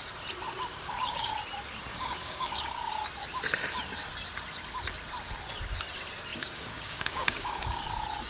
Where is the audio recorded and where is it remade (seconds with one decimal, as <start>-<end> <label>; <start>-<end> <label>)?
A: 0.0-0.7 recorded; 0.7-1.4 remade; 1.4-1.9 recorded; 1.9-2.9 remade; 2.9-6.3 recorded; 6.3-7.9 remade; 7.9-8.3 recorded